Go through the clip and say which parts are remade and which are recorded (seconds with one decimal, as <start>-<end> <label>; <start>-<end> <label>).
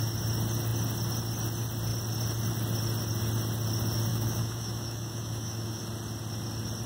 0.0-4.1 recorded; 4.1-5.8 remade; 5.8-6.9 recorded